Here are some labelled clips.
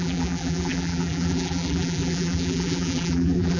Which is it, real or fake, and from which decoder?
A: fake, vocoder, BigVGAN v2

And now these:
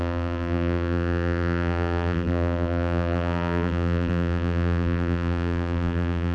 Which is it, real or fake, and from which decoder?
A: fake, vocoder, BigVGAN v2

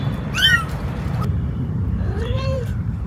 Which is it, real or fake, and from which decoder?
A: fake, vocoder, BigVGAN v2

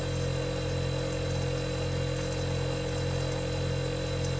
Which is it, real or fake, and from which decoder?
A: real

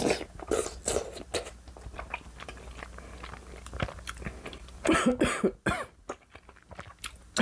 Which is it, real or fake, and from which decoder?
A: real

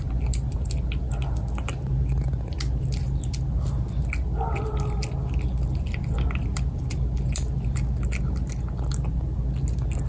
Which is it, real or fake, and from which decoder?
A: real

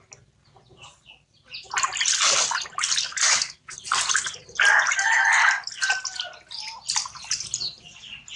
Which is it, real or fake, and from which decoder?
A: real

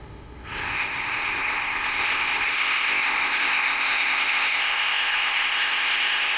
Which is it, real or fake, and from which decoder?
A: fake, codec, ZipCodec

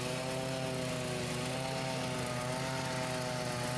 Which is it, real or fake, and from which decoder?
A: real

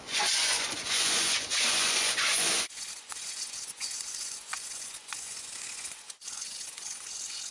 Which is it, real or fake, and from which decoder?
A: fake, vocoder, Vocos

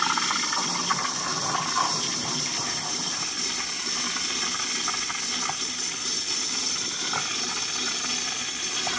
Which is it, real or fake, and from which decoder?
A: real